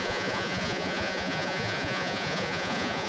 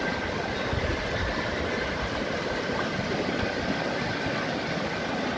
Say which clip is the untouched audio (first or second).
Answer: second